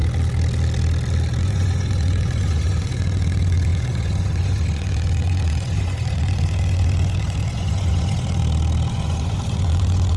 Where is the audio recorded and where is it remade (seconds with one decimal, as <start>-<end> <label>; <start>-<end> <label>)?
0.0-1.4 recorded; 1.4-8.4 remade; 8.4-8.9 recorded; 8.9-10.2 remade